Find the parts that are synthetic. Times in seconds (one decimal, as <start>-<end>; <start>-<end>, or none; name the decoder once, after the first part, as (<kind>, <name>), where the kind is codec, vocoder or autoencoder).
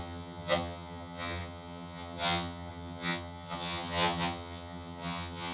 0.0-5.5 (vocoder, HiFi-GAN)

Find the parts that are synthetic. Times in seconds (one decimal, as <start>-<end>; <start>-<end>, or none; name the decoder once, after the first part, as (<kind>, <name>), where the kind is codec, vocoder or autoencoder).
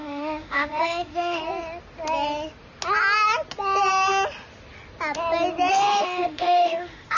0.0-1.4 (autoencoder, DAC-VAE); 5.7-7.2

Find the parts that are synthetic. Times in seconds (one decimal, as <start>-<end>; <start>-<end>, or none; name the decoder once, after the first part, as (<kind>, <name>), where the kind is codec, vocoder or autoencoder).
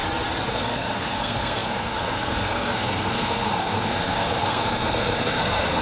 0.5-5.8 (codec, SNAC)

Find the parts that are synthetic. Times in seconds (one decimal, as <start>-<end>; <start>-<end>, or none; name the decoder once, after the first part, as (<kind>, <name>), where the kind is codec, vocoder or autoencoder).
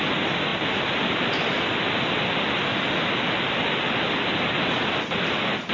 none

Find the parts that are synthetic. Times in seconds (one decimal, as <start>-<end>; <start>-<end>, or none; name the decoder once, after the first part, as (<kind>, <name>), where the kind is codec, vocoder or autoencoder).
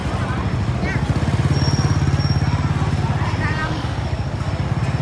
3.6-4.5 (codec, DAC)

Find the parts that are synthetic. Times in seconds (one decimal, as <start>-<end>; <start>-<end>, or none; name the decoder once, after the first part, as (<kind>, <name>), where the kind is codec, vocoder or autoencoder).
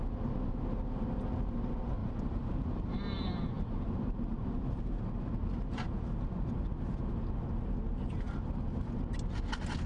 2.0-6.5 (vocoder, BigVGAN v2)